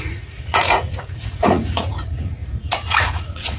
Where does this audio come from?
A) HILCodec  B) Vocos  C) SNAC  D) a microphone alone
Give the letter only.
B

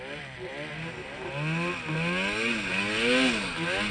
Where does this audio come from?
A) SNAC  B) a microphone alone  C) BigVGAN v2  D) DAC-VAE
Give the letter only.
B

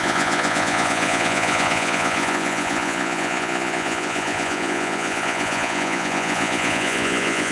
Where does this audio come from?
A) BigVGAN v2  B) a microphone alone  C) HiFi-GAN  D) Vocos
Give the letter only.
D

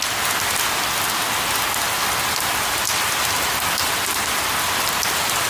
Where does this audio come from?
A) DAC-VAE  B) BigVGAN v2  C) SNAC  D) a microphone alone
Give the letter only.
D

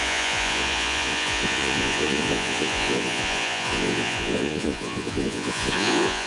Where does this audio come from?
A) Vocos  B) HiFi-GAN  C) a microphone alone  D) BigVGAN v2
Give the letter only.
A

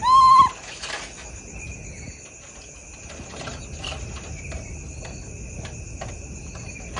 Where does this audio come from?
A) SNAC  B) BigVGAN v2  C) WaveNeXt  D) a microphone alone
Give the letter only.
D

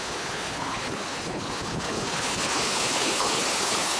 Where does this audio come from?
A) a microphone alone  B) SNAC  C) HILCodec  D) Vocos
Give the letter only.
C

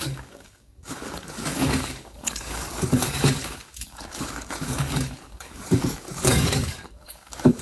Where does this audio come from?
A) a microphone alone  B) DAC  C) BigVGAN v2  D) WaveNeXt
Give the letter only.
B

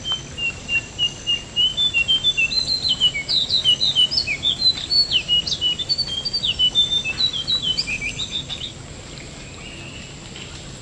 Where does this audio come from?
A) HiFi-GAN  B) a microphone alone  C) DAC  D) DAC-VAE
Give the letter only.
B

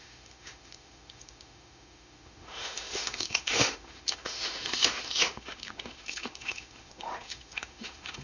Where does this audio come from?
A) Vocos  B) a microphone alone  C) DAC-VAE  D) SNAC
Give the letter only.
C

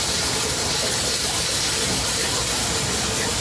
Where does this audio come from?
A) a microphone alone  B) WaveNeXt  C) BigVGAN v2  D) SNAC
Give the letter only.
A